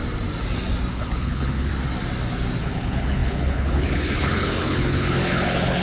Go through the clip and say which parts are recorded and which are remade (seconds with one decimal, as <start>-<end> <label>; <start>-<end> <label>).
0.0-0.9 recorded; 0.9-1.7 remade; 1.7-2.6 recorded; 2.6-5.8 remade